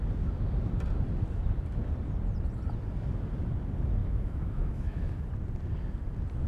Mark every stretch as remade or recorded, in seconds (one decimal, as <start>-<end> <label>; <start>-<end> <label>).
0.0-4.0 recorded; 4.0-5.3 remade; 5.3-6.5 recorded